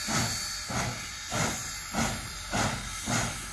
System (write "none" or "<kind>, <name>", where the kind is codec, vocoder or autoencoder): none